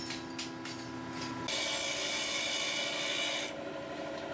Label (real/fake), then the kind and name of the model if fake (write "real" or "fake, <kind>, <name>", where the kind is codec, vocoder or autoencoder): real